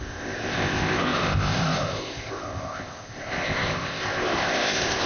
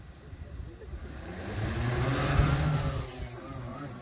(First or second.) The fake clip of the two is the first